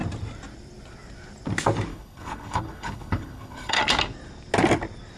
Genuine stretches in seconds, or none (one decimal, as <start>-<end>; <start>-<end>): 0.0-1.9; 3.8-5.2